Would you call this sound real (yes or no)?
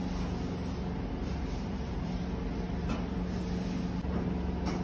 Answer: yes